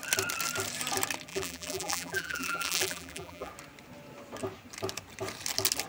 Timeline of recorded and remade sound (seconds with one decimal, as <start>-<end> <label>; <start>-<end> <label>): 0.0-1.3 recorded; 1.3-3.5 remade; 3.5-5.9 recorded